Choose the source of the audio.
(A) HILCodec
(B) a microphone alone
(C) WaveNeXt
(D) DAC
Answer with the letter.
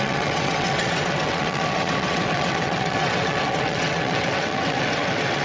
C